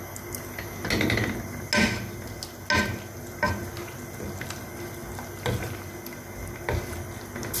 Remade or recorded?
recorded